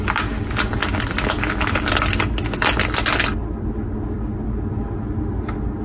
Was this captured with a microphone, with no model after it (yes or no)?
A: yes